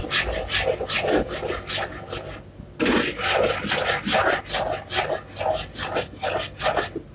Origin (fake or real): real